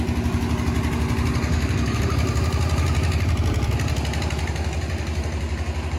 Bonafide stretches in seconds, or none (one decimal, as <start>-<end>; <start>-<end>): 0.0-1.5; 2.0-6.0

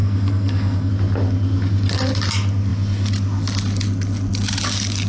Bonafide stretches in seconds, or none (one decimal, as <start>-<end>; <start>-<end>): 0.9-5.1

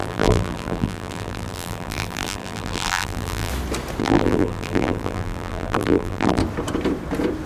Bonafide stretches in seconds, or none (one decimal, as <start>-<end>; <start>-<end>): 3.5-4.0; 6.4-7.5

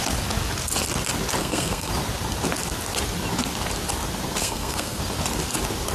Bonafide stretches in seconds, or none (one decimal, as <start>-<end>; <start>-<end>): 0.0-1.4; 1.9-4.4; 5.0-5.9

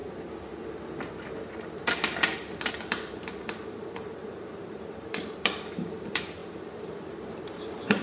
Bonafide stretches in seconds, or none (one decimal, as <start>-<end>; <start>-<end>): 0.0-2.7

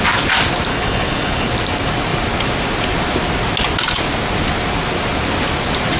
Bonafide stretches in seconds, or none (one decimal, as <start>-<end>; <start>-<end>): 0.0-0.7; 1.5-6.0